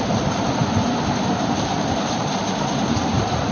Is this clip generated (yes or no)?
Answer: yes